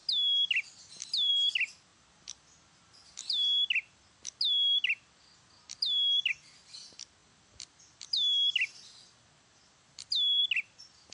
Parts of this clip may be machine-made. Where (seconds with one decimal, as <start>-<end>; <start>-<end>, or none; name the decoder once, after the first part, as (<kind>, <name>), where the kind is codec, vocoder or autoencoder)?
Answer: none